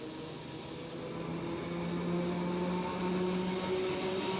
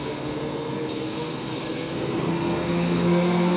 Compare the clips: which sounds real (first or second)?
first